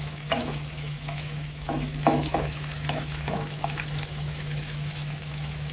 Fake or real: fake